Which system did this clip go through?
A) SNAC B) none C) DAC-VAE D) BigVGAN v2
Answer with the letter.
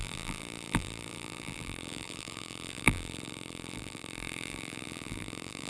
D